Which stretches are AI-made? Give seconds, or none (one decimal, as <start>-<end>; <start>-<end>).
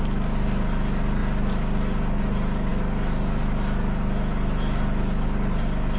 none